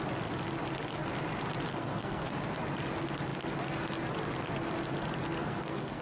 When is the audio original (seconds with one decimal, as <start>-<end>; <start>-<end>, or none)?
0.0-1.7; 2.3-5.4